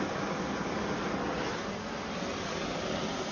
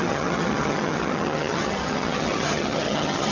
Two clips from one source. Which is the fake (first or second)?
second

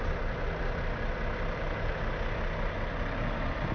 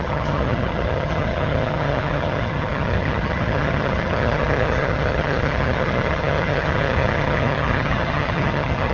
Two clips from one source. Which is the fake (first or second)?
second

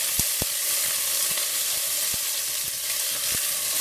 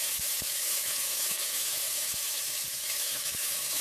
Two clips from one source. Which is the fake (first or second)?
second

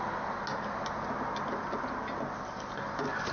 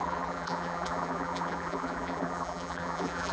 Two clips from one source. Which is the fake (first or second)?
second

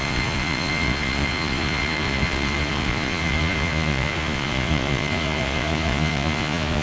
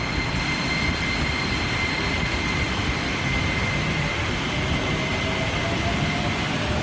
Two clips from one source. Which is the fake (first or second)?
first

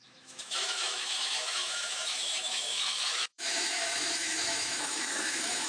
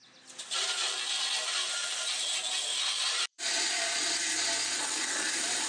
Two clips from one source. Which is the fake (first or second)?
first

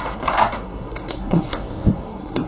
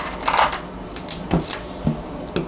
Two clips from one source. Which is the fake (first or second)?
first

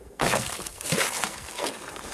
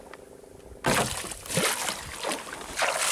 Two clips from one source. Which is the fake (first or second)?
first